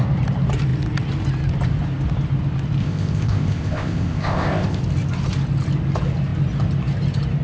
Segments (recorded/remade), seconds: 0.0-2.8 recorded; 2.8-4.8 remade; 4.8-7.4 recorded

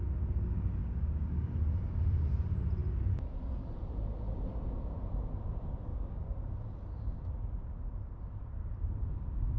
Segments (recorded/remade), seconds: 0.0-0.8 recorded; 0.8-1.5 remade; 1.5-5.9 recorded; 5.9-6.5 remade; 6.5-9.6 recorded

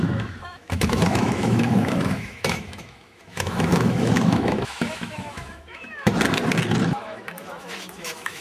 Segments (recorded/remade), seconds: 0.0-6.1 remade; 6.1-6.8 recorded; 6.8-8.4 remade

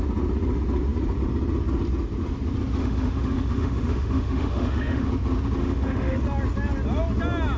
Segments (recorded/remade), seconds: 0.0-2.8 recorded; 2.8-5.1 remade; 5.1-5.6 recorded; 5.6-6.2 remade; 6.2-7.6 recorded